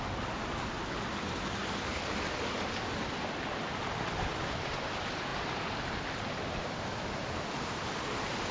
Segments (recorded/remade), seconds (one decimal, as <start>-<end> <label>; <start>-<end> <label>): 0.0-8.5 recorded